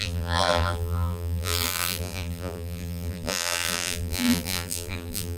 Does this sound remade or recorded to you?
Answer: remade